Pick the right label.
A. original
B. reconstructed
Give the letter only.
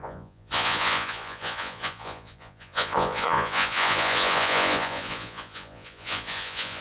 B